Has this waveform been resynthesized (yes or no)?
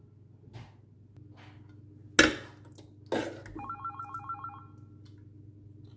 no